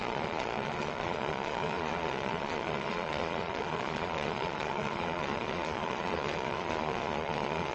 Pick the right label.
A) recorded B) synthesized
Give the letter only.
B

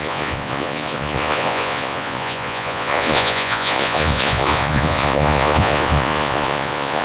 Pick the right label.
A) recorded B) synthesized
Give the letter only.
B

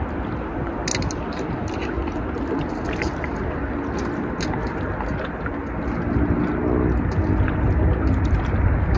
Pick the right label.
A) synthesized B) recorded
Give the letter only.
B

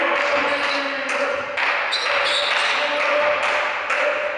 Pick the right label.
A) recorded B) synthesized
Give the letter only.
A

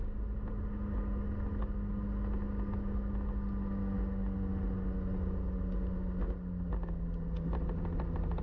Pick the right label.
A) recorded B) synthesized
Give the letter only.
A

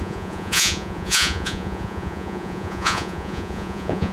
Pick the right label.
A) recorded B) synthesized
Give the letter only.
B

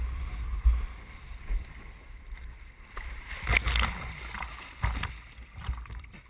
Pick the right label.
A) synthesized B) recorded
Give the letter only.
B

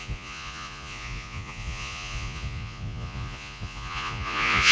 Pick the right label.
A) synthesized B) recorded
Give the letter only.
A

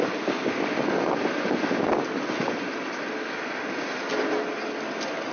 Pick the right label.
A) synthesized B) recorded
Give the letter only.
B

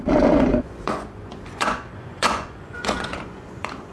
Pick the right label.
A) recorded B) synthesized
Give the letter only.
B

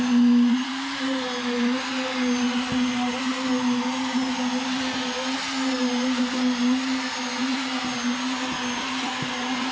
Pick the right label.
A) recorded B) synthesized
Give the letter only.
A